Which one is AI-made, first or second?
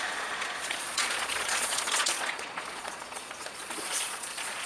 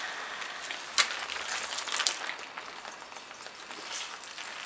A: first